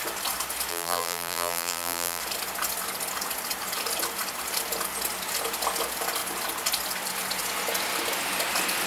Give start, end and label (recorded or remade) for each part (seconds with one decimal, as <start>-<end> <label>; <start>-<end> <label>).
0.0-0.7 recorded; 0.7-2.2 remade; 2.2-8.9 recorded